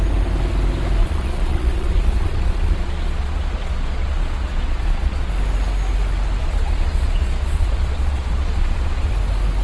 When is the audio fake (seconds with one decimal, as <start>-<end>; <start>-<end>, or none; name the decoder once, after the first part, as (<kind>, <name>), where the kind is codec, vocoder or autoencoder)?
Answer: 1.0-5.3 (vocoder, Vocos); 6.4-9.1